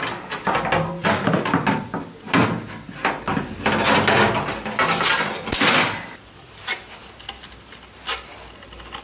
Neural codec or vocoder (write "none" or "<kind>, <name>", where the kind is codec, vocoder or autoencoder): none